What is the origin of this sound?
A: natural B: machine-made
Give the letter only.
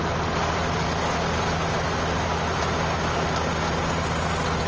A